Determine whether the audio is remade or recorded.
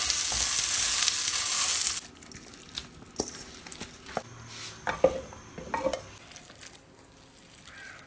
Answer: recorded